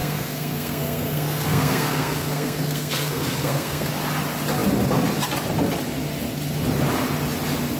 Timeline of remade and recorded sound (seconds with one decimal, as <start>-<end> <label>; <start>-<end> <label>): 0.0-3.9 remade; 3.9-7.8 recorded